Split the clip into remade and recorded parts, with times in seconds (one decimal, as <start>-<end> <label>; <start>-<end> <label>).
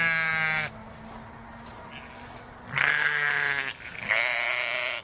0.0-2.8 recorded; 2.8-3.3 remade; 3.3-5.0 recorded